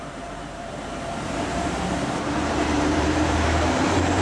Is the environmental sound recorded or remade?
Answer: remade